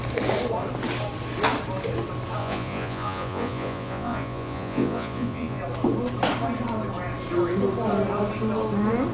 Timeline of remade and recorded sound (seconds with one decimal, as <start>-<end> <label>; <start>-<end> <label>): 0.0-2.4 recorded; 2.4-5.6 remade; 5.6-9.1 recorded